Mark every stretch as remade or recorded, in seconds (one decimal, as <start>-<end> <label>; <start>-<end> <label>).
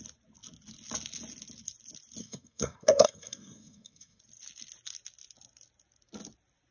0.0-2.2 recorded; 2.2-4.2 remade; 4.2-6.7 recorded